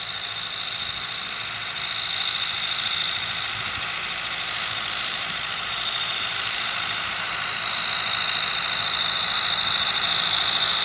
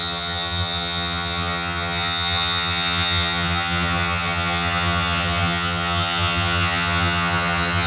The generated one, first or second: second